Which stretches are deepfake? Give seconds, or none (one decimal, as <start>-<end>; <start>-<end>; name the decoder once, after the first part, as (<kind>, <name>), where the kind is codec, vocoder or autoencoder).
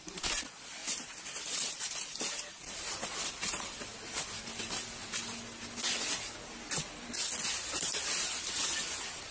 0.0-3.9 (vocoder, BigVGAN v2); 7.8-9.3